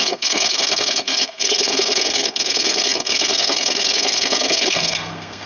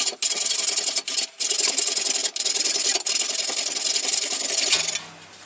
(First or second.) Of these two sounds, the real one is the second